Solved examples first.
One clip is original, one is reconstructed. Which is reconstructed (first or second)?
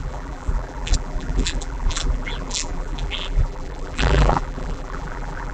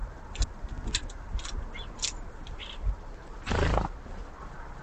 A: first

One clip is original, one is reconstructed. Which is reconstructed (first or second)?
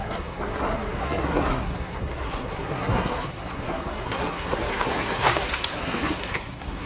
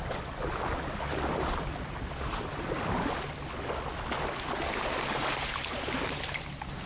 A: first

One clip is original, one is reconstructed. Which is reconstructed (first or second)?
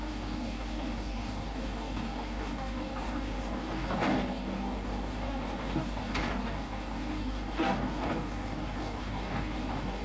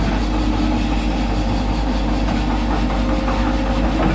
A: first